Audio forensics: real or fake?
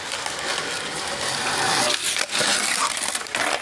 real